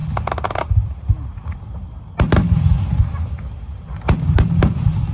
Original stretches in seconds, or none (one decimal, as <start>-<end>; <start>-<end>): 0.0-5.1